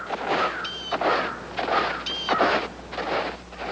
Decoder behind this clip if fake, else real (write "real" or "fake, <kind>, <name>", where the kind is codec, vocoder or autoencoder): real